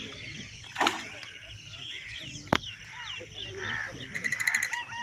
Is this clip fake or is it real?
fake